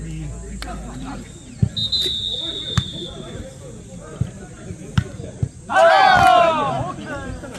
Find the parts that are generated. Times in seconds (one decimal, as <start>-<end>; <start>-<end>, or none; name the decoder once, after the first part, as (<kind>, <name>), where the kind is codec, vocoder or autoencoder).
none